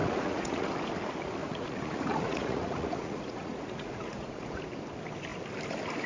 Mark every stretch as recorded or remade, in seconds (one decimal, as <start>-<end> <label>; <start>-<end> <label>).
0.0-0.7 remade; 0.7-1.4 recorded; 1.4-4.6 remade; 4.6-6.1 recorded